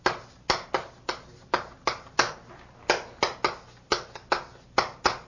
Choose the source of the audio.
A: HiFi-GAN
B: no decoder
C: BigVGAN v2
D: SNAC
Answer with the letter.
B